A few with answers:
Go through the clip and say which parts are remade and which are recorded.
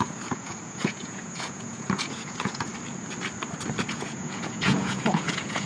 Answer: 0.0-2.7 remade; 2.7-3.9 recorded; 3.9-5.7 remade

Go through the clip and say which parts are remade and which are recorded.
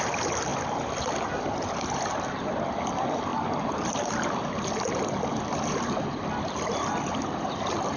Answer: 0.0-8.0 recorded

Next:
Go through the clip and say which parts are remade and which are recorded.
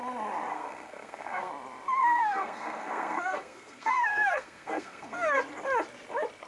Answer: 0.0-0.5 recorded; 0.5-1.5 remade; 1.5-2.0 recorded; 2.0-5.4 remade; 5.4-6.5 recorded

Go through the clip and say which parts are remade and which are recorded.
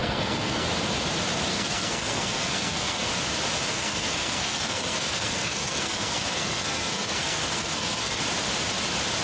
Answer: 0.0-0.7 remade; 0.7-1.5 recorded; 1.5-3.1 remade; 3.1-3.7 recorded; 3.7-8.2 remade; 8.2-9.2 recorded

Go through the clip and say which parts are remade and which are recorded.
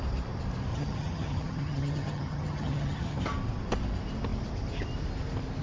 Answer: 0.0-0.7 recorded; 0.7-3.2 remade; 3.2-5.6 recorded